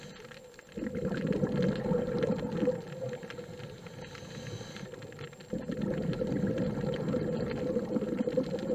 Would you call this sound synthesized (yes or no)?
no